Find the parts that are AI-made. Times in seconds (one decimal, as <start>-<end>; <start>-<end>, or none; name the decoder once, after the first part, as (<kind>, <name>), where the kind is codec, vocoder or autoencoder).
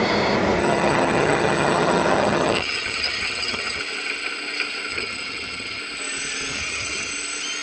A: 0.6-3.8 (vocoder, HiFi-GAN); 4.9-5.8; 6.5-7.1